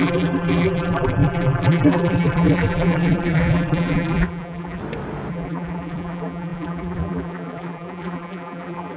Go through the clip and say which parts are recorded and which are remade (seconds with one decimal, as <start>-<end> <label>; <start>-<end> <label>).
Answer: 0.0-4.8 remade; 4.8-5.3 recorded; 5.3-9.0 remade